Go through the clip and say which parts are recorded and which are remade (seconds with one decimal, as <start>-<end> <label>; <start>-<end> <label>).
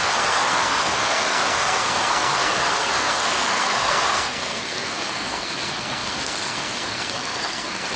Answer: 0.0-8.0 remade